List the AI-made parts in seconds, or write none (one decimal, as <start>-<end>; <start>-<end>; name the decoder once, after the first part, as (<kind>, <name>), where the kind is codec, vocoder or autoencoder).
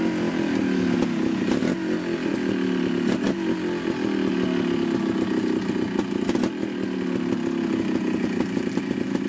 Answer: none